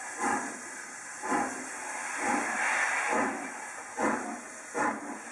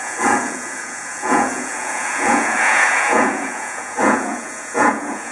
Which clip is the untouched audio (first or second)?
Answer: first